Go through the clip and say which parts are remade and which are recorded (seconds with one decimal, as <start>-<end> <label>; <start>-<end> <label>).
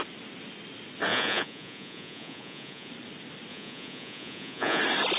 0.0-1.1 recorded; 1.1-2.9 remade; 2.9-3.5 recorded; 3.5-4.8 remade; 4.8-5.2 recorded